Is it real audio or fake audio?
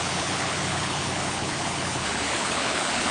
fake